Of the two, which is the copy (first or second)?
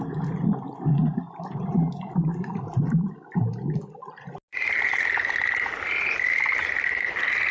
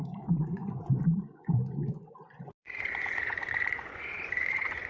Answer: second